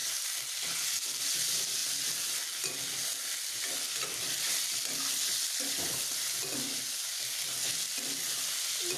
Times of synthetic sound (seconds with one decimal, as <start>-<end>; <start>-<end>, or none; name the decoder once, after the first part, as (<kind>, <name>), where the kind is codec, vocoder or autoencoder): none